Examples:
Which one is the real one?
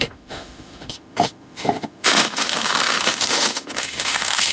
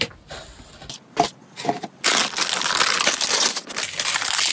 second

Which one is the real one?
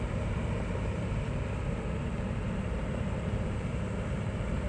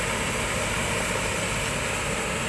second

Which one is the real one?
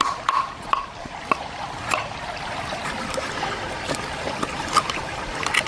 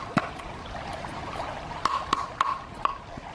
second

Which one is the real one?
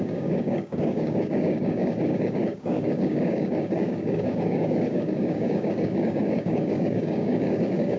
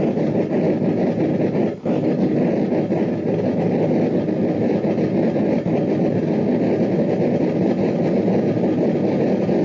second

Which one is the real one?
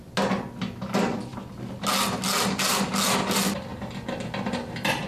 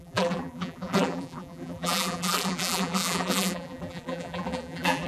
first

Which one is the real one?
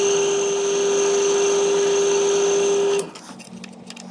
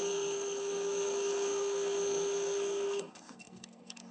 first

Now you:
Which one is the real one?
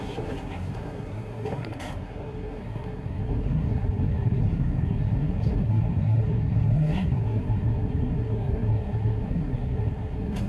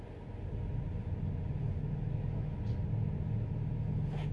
second